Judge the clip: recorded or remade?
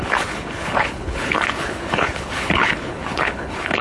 remade